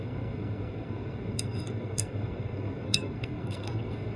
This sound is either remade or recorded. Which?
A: remade